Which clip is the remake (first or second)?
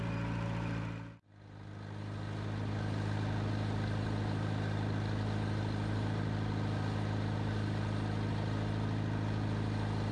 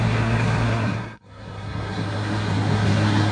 second